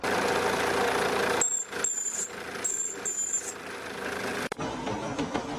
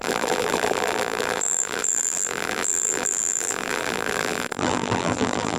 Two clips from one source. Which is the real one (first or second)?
first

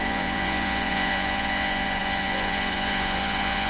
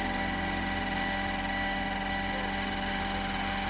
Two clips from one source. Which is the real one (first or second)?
second